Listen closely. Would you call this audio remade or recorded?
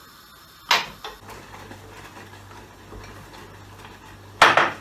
recorded